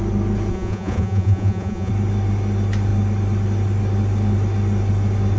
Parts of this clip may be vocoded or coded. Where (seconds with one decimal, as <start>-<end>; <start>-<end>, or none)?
0.5-1.9